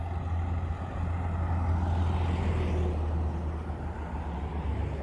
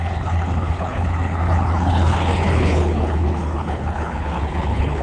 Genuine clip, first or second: first